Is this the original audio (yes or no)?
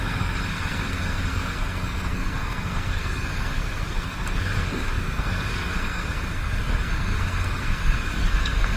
no